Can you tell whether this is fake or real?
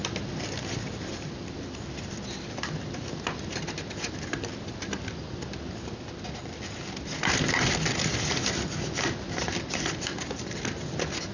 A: real